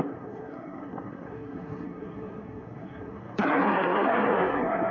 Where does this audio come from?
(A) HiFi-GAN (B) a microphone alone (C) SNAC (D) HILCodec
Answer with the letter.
C